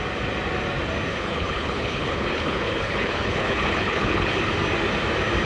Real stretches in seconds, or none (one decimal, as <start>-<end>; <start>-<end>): 0.0-1.1; 4.4-5.5

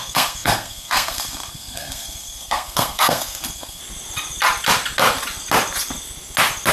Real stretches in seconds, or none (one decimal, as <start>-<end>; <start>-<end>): 3.8-6.7

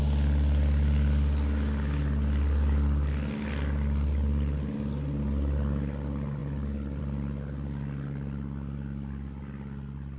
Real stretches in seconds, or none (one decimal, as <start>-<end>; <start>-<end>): 0.0-10.2

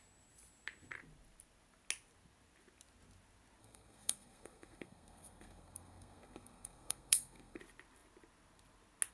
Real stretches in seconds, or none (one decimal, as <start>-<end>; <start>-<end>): 0.0-3.6; 7.6-9.1

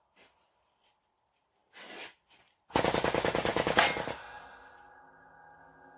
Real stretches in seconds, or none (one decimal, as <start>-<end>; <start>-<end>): 0.0-6.0

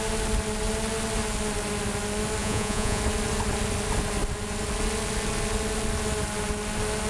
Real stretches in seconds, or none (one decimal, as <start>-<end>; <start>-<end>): 0.0-2.4; 3.0-7.1

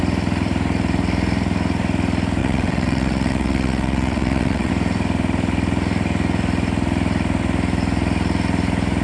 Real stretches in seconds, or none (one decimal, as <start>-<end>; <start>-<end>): 0.0-2.4; 4.7-9.0